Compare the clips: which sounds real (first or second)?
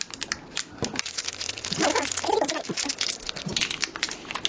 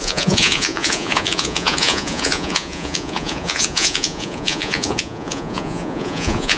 first